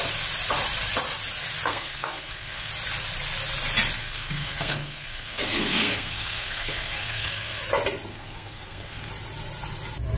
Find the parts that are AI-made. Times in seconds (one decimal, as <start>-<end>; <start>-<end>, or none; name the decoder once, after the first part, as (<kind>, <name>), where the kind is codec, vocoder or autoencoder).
1.7-2.7 (codec, SNAC); 4.0-7.6; 8.1-9.1